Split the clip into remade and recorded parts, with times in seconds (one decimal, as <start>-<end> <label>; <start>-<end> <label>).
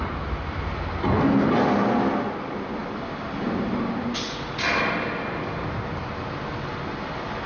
0.0-7.5 recorded